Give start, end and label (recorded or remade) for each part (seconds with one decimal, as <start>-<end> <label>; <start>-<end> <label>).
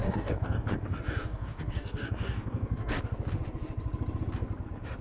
0.0-3.0 remade; 3.0-5.0 recorded